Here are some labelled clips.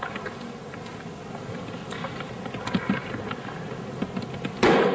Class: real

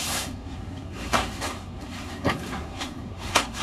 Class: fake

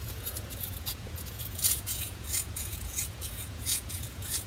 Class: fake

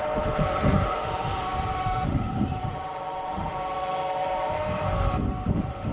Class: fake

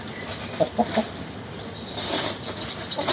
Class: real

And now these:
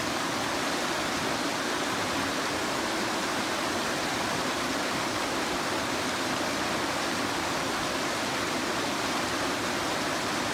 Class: real